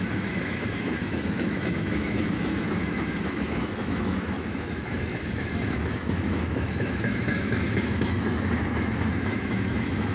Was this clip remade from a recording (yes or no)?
yes